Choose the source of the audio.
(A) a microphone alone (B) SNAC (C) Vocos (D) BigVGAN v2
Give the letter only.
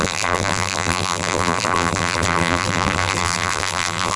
D